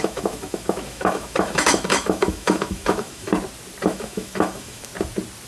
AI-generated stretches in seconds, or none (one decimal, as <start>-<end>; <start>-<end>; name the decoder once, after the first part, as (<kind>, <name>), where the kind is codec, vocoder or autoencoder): 0.0-3.3 (autoencoder, DAC-VAE); 3.9-4.9